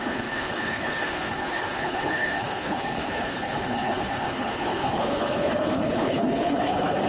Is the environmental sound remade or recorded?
remade